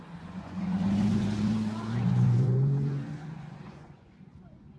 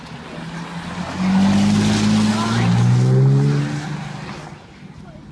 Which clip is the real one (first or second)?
second